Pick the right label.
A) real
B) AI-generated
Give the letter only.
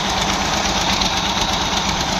B